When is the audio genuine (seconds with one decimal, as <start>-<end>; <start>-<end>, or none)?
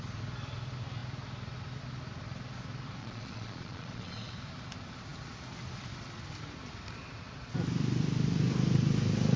0.0-3.0; 4.3-9.4